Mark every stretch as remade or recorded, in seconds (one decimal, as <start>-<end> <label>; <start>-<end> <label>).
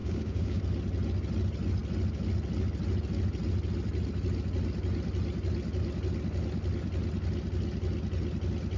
0.0-0.6 remade; 0.6-8.8 recorded